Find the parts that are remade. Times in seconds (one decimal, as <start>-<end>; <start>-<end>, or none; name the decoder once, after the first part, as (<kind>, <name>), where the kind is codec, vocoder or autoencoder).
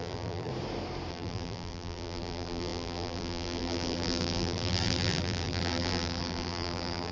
0.0-0.5 (vocoder, BigVGAN v2); 1.1-7.1